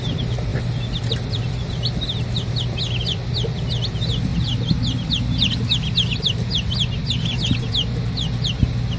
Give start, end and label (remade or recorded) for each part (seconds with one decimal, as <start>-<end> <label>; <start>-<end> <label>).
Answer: 0.0-9.0 recorded